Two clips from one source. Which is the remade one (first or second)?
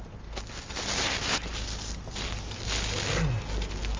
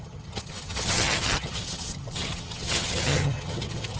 second